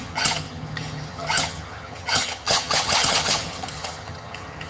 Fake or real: fake